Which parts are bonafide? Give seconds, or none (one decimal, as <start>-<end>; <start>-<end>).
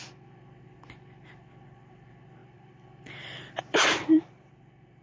0.0-2.4; 4.5-5.0